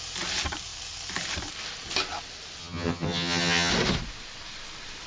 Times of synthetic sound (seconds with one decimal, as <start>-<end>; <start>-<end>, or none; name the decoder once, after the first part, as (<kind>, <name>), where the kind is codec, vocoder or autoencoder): 2.6-3.7 (vocoder, HiFi-GAN)